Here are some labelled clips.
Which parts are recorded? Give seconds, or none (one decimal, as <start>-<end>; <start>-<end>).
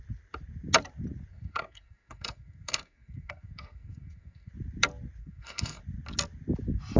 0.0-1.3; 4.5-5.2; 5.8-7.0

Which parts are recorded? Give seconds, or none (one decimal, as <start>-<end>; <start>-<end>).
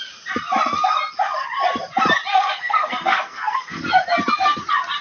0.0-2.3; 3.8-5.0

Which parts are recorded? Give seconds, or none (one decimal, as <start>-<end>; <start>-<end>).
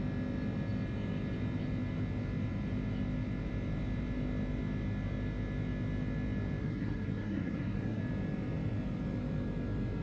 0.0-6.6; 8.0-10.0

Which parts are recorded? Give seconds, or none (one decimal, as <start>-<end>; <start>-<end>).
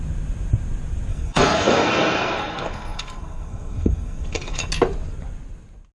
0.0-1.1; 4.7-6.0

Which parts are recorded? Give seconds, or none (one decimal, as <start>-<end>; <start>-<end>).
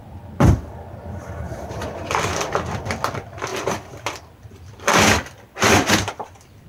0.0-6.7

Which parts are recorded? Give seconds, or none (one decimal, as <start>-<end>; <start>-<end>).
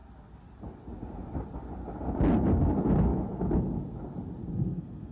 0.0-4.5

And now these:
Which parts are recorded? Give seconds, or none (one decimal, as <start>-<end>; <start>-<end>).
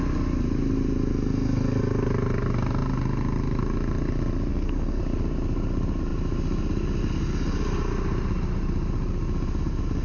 0.0-4.5; 5.0-10.0